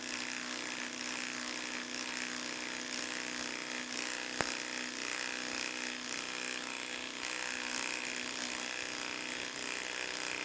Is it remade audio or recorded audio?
recorded